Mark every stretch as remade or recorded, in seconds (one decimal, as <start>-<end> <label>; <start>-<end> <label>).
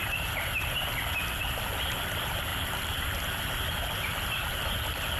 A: 0.0-0.8 remade; 0.8-2.5 recorded; 2.5-3.1 remade; 3.1-5.2 recorded